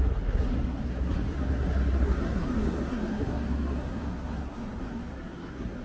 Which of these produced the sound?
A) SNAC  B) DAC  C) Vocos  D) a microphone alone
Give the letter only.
A